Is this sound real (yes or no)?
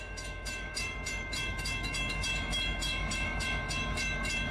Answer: no